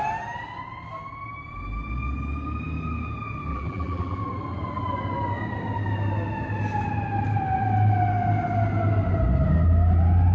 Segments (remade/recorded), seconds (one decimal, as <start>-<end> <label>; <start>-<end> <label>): 0.0-3.5 recorded; 3.5-4.2 remade; 4.2-10.3 recorded

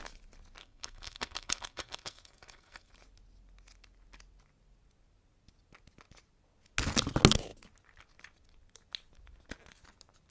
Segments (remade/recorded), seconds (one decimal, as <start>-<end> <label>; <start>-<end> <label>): 0.0-0.6 recorded; 0.6-2.9 remade; 2.9-10.3 recorded

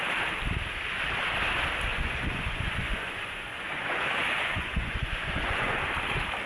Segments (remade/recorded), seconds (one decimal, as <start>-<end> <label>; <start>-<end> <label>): 0.0-1.9 recorded; 1.9-5.8 remade; 5.8-6.5 recorded

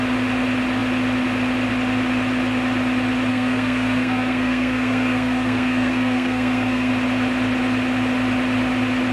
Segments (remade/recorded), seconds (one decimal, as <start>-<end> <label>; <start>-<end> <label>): 0.0-3.3 recorded; 3.3-6.9 remade; 6.9-9.1 recorded

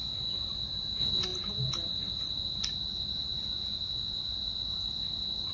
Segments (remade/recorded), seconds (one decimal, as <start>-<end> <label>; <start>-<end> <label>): 0.0-5.5 recorded

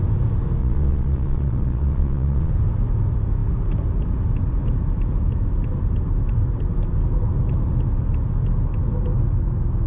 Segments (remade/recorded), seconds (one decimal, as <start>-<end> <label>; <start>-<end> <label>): 0.0-0.6 recorded; 0.6-2.5 remade; 2.5-9.9 recorded